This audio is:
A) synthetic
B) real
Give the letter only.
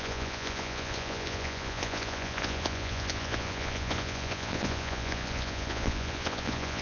A